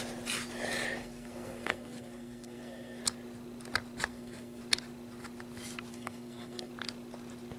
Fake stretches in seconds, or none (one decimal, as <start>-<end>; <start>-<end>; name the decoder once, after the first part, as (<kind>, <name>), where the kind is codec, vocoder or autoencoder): 1.0-3.0 (codec, SNAC); 4.1-4.6; 5.9-6.7